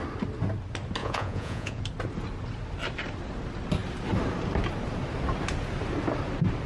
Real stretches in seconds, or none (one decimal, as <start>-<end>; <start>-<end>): 0.0-1.0; 1.8-6.7